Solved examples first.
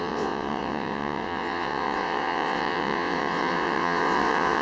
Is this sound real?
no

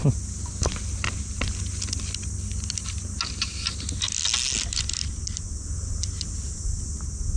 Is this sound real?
yes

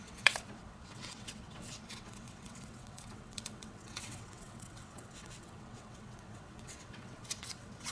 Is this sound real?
no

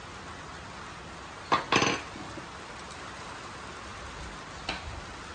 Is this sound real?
yes